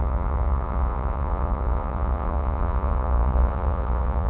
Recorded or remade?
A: remade